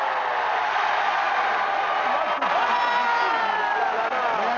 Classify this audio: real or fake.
real